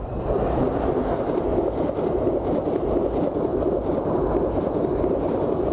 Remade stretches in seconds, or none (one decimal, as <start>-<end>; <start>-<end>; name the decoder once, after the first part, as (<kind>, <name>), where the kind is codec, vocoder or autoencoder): none